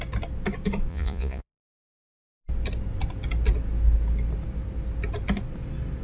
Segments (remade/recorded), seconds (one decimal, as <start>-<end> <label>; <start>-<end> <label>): 0.0-0.9 recorded; 0.9-2.0 remade; 2.0-6.0 recorded